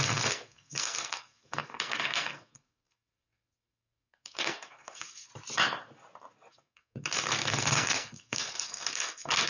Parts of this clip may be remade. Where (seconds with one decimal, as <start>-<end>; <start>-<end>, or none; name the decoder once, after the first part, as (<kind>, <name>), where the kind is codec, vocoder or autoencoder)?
0.0-5.3 (codec, SNAC); 6.5-9.5